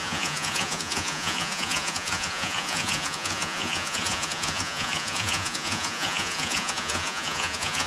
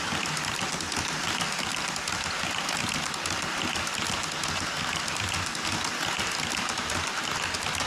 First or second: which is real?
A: second